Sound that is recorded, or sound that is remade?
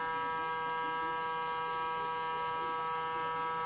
recorded